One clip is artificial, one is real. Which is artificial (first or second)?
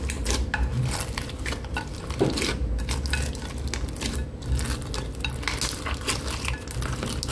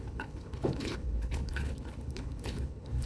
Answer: second